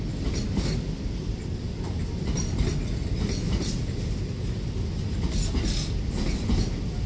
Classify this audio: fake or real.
real